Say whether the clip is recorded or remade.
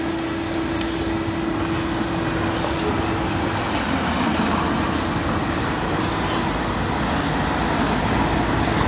recorded